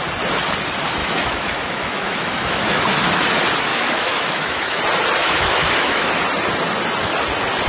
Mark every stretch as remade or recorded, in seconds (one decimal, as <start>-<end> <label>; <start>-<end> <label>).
0.0-1.0 recorded; 1.0-2.8 remade; 2.8-3.7 recorded; 3.7-4.8 remade; 4.8-5.2 recorded; 5.2-6.1 remade; 6.1-7.7 recorded